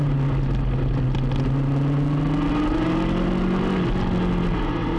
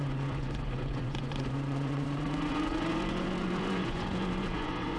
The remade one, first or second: second